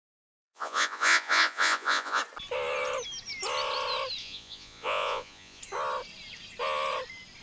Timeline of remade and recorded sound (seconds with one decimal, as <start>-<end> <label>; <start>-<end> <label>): 0.0-2.2 remade; 2.2-4.2 recorded; 4.2-5.6 remade; 5.6-7.4 recorded